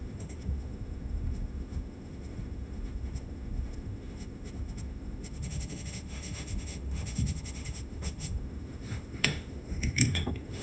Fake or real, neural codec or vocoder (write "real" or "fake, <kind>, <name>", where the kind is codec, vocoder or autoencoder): fake, autoencoder, DAC-VAE